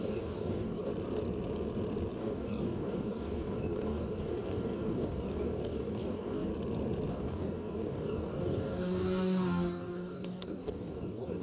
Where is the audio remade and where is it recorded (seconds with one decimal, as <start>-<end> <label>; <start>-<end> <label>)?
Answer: 0.0-0.9 remade; 0.9-2.2 recorded; 2.2-6.5 remade; 6.5-7.1 recorded; 7.1-11.4 remade